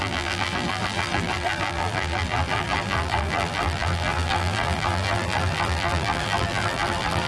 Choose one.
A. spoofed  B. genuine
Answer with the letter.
A